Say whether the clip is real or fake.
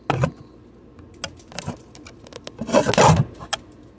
real